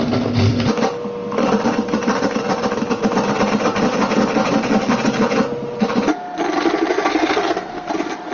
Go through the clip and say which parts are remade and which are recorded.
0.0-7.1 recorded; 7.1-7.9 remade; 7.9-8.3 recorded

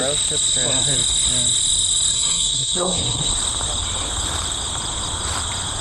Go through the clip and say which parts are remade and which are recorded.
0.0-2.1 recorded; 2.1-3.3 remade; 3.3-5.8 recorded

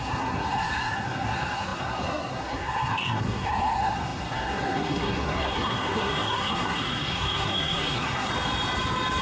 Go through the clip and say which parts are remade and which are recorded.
0.0-8.3 remade; 8.3-9.2 recorded

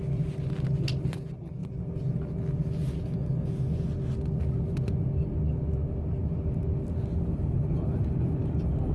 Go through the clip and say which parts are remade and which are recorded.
0.0-8.9 recorded